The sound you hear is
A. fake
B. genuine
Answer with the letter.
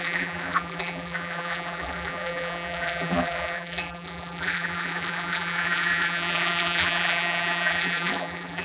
A